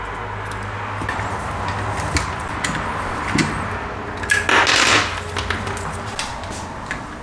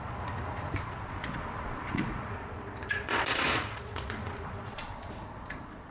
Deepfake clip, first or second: second